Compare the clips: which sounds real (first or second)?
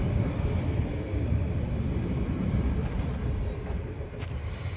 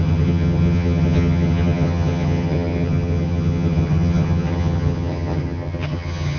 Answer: first